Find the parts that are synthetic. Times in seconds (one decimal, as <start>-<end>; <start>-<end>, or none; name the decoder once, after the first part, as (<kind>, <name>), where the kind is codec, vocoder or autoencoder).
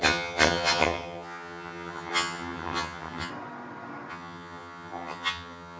0.0-3.3 (vocoder, HiFi-GAN); 4.1-5.8